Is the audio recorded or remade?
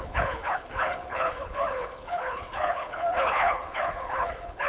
remade